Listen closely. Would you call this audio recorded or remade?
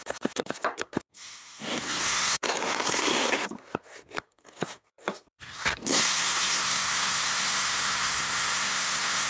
remade